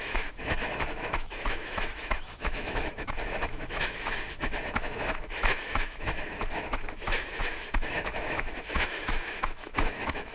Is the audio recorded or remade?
remade